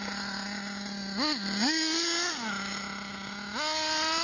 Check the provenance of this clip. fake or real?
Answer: real